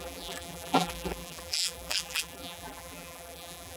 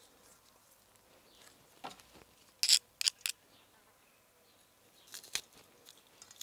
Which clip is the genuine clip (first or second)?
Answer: second